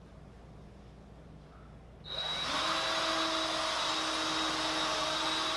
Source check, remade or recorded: recorded